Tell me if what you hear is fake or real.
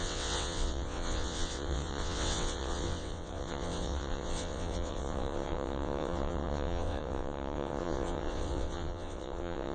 fake